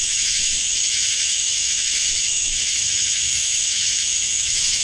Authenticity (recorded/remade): remade